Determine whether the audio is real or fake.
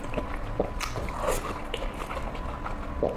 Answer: real